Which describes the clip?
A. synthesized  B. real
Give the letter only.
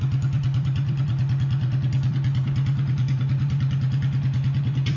A